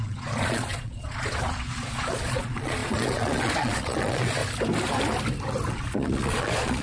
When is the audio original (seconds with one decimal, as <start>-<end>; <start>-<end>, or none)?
4.4-5.7